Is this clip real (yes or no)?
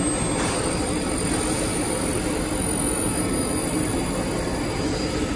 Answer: yes